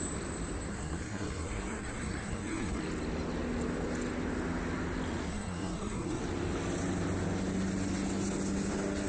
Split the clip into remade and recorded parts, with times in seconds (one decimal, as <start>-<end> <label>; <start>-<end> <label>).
0.0-0.7 recorded; 0.7-2.8 remade; 2.8-5.3 recorded; 5.3-6.2 remade; 6.2-9.1 recorded